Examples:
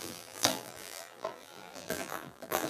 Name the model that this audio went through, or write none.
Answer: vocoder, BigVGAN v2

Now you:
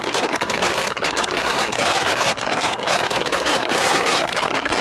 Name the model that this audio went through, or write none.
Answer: codec, SNAC